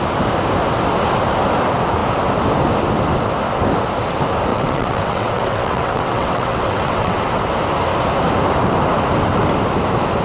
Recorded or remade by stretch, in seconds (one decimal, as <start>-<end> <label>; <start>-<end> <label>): 0.0-4.5 recorded; 4.5-7.2 remade; 7.2-10.2 recorded